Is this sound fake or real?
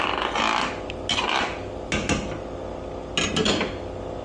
real